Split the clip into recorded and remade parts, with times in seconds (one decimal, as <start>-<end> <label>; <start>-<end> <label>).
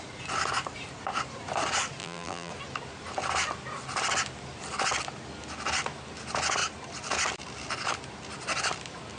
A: 0.0-2.0 recorded; 2.0-2.5 remade; 2.5-9.2 recorded